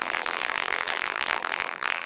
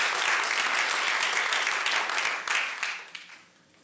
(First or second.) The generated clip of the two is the first